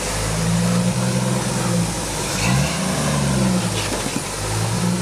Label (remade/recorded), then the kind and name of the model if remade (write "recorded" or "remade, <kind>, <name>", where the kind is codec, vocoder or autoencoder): recorded